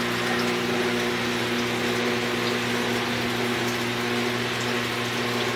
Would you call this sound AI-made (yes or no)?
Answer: no